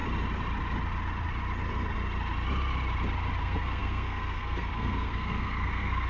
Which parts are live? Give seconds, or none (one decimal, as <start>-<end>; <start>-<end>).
0.0-3.4